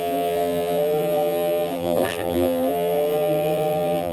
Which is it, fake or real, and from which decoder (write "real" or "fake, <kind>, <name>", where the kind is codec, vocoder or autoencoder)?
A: fake, vocoder, BigVGAN v2